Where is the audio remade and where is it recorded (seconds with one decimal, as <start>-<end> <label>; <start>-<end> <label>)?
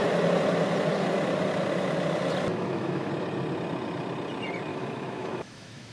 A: 0.0-2.5 recorded; 2.5-3.1 remade; 3.1-4.7 recorded; 4.7-5.9 remade